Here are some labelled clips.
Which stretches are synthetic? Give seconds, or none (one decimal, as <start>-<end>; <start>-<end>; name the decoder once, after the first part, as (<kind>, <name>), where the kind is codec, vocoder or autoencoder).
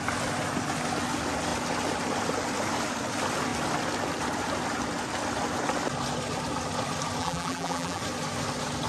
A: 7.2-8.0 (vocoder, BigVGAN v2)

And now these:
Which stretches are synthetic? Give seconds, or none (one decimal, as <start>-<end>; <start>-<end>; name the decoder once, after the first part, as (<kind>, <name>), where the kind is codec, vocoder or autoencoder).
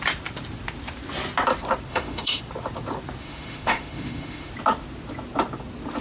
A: 1.9-2.4 (autoencoder, DAC-VAE); 3.2-4.5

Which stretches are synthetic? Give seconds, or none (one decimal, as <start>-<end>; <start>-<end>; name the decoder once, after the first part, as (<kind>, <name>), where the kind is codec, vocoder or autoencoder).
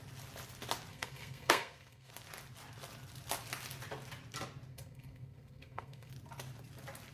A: 0.9-2.1 (codec, SNAC); 4.7-6.1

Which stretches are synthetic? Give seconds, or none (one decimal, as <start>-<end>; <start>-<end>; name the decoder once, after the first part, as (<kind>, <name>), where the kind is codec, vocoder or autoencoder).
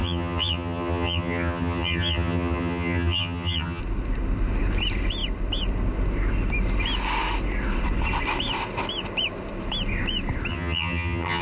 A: 0.0-3.8 (vocoder, HiFi-GAN); 10.5-11.4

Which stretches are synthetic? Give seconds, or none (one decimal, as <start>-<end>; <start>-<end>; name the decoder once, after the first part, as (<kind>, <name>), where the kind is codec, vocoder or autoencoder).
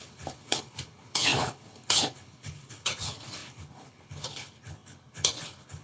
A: 0.0-5.8 (codec, HILCodec)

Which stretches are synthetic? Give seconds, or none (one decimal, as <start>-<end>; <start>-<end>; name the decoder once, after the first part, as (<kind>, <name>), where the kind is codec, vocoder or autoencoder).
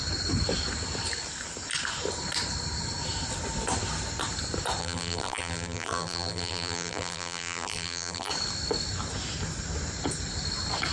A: 4.8-8.3 (vocoder, BigVGAN v2)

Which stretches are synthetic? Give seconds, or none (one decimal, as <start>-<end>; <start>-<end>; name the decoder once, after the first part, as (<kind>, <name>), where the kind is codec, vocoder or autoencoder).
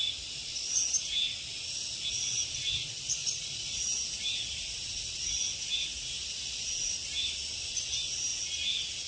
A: 8.3-9.1 (vocoder, Vocos)